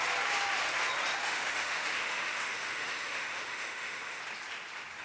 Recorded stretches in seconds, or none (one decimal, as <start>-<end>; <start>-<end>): 0.0-1.2; 4.2-5.0